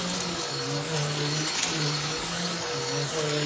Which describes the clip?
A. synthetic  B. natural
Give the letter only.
A